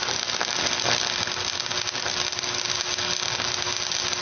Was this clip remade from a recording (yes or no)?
no